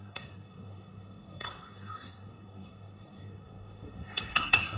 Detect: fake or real fake